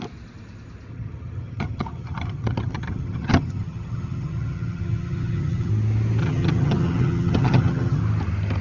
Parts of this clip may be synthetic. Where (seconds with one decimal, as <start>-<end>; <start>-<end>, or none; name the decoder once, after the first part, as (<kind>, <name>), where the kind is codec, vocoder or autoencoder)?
0.9-5.7 (vocoder, HiFi-GAN); 6.2-8.0